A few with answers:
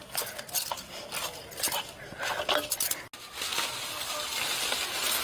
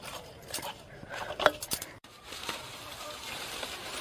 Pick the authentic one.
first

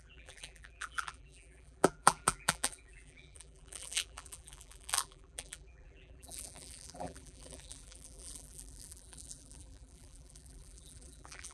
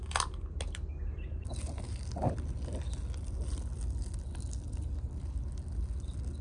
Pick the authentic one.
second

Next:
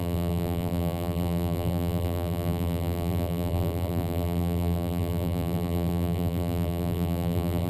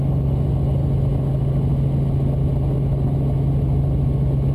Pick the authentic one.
second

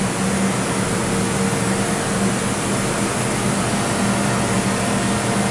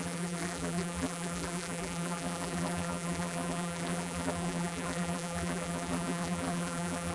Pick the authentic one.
first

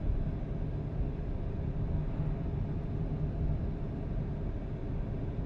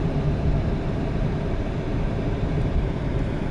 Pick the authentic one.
first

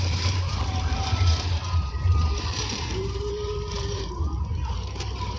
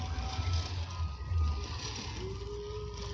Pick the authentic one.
second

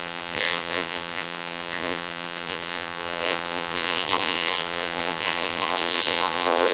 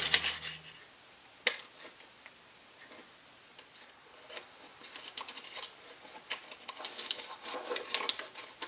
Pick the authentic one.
second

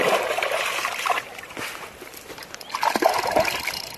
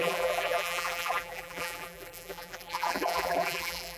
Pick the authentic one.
first